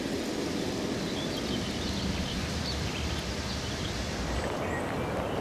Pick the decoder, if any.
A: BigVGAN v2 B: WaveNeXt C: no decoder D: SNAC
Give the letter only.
C